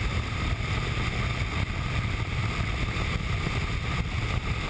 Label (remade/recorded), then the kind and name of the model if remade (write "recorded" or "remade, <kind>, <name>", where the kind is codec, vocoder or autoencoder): remade, vocoder, BigVGAN v2